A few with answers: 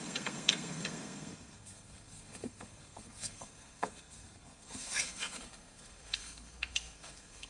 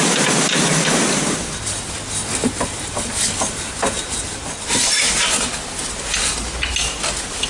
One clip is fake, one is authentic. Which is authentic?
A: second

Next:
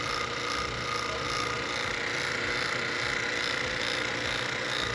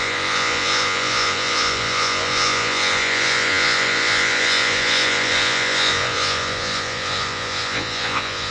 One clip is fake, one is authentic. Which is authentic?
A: first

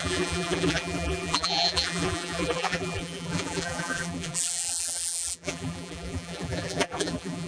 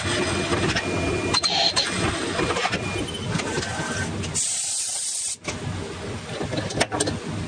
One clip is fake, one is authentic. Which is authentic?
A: second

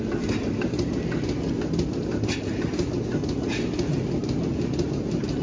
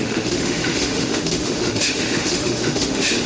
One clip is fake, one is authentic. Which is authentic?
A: first